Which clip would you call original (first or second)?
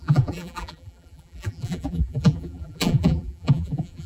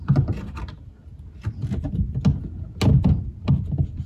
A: second